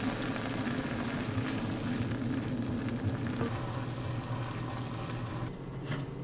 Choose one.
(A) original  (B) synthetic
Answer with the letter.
A